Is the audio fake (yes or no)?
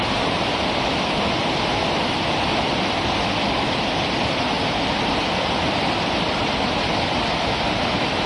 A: yes